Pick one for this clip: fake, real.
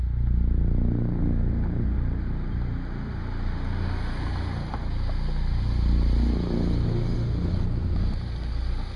real